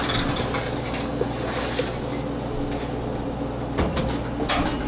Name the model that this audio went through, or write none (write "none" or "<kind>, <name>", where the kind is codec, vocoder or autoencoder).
none